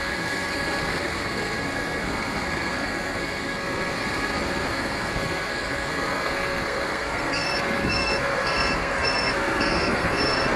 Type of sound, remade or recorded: remade